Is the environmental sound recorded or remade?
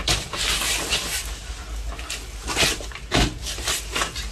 recorded